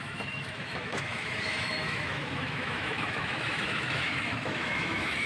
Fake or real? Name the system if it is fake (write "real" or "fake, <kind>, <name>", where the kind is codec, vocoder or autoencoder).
fake, autoencoder, DAC-VAE